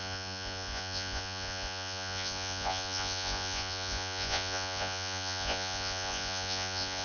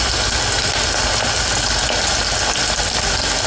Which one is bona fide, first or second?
second